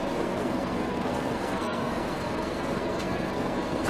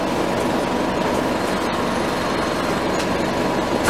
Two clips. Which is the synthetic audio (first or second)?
first